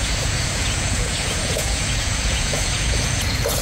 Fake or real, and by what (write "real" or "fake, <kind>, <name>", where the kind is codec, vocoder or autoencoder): fake, vocoder, Vocos